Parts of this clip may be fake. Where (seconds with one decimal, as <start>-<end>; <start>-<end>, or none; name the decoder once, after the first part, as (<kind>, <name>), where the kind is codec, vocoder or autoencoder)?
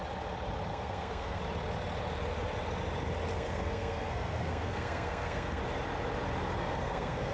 0.7-1.4 (codec, SNAC); 3.3-5.6; 6.6-7.3